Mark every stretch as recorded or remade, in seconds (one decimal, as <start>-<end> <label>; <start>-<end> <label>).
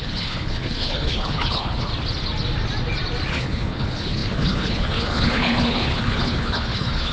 0.0-1.9 remade; 1.9-3.3 recorded; 3.3-7.1 remade